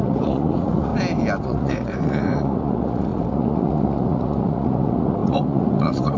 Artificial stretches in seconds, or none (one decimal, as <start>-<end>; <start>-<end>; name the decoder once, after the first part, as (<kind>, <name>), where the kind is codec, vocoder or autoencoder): 0.0-0.9 (vocoder, Vocos); 1.4-6.2